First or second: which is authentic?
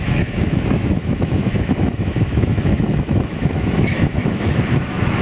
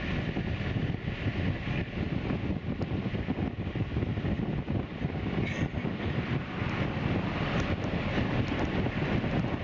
second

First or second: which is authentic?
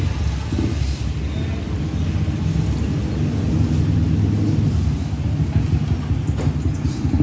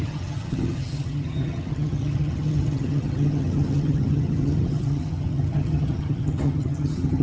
first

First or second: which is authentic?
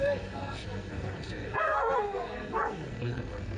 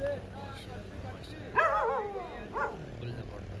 second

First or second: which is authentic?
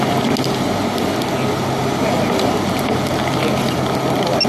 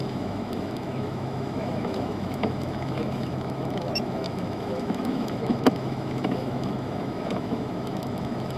first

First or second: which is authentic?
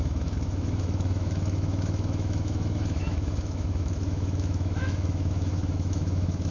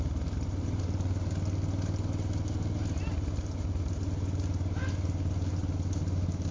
second